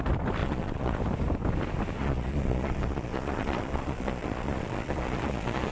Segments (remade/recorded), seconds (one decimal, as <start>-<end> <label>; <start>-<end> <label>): 0.0-0.4 recorded; 0.4-1.0 remade; 1.0-2.0 recorded; 2.0-5.7 remade